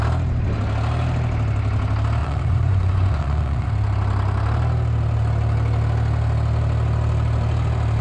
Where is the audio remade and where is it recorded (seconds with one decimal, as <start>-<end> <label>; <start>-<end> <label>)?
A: 0.0-2.2 recorded; 2.2-3.7 remade; 3.7-8.0 recorded